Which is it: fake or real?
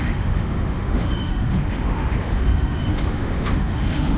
fake